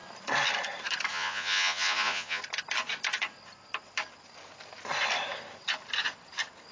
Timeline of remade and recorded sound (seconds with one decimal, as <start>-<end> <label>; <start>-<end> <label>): 0.0-1.1 recorded; 1.1-2.4 remade; 2.4-6.7 recorded